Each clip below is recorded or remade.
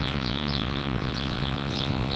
remade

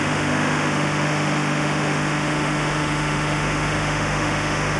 remade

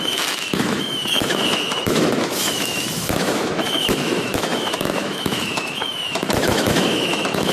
remade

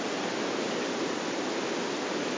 recorded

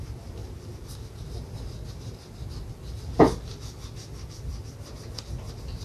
recorded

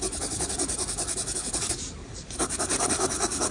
remade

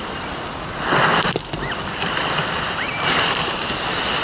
remade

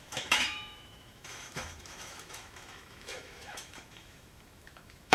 remade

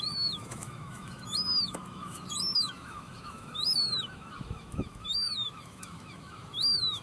remade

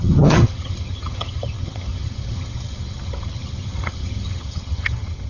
remade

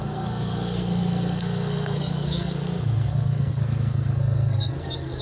remade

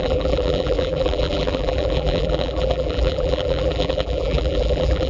remade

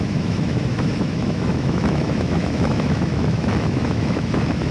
remade